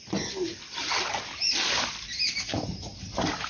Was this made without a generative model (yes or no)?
yes